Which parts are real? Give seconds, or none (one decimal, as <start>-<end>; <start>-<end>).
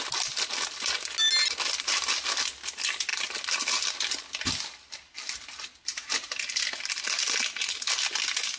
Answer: 0.0-8.6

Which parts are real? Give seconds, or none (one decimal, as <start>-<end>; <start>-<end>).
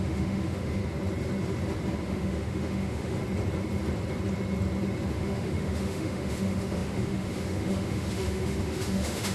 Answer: 0.8-2.0; 3.2-5.1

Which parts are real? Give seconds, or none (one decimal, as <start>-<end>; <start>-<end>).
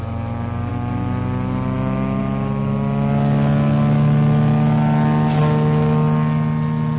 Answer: 0.0-7.0